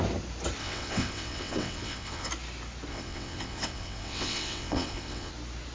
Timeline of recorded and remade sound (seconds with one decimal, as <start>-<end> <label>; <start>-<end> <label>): 0.0-0.6 recorded; 0.6-2.3 remade; 2.3-2.9 recorded; 2.9-5.3 remade; 5.3-5.7 recorded